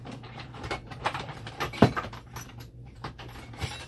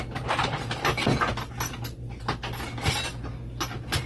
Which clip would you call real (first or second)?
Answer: second